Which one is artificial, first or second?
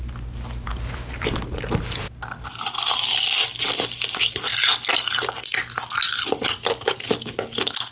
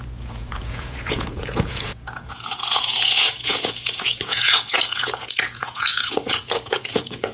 second